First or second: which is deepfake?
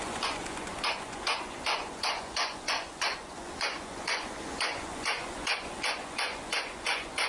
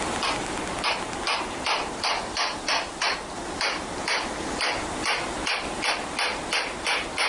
first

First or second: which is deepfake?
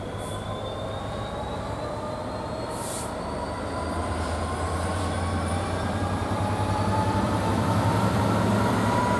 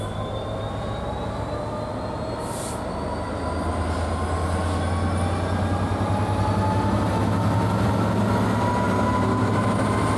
first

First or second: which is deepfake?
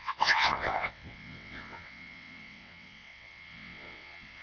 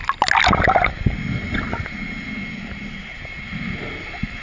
first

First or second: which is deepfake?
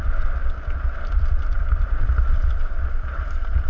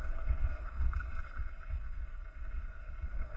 second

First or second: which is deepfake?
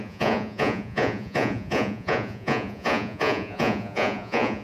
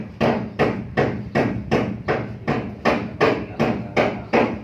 first